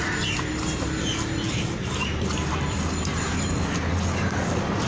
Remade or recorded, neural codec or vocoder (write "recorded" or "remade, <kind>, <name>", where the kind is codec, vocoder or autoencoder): recorded